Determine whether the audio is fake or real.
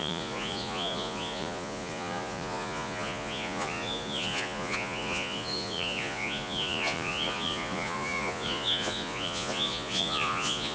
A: fake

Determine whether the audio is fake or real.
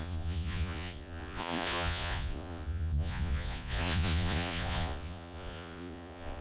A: fake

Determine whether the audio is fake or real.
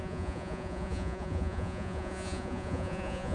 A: fake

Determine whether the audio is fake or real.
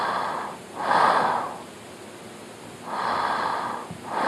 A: real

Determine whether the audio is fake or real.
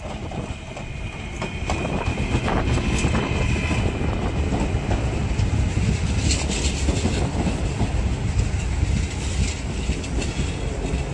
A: real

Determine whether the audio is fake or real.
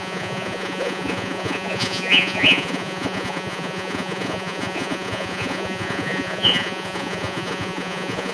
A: fake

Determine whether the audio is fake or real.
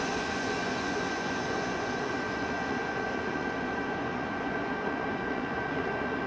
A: fake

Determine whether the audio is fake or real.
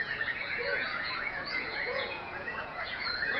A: fake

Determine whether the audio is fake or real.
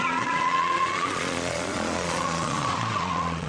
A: fake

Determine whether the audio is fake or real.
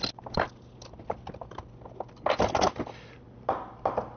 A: real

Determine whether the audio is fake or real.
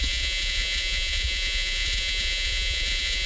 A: fake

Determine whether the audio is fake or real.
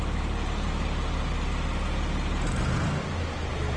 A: real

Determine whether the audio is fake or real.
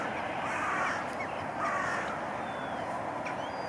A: real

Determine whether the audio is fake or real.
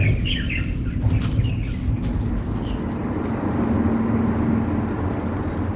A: real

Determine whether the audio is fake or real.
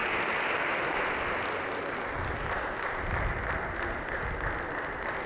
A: real